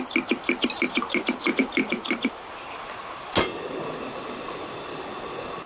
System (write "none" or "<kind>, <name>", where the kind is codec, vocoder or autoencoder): none